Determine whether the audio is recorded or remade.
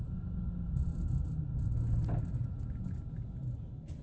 recorded